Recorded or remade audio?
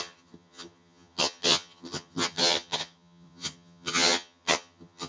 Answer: remade